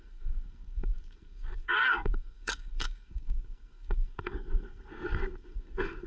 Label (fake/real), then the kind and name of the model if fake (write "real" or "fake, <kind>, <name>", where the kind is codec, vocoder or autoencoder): fake, codec, SNAC